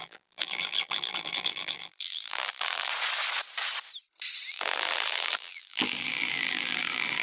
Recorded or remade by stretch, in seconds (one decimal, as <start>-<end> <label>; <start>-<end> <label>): 0.0-2.9 remade; 2.9-4.5 recorded; 4.5-7.2 remade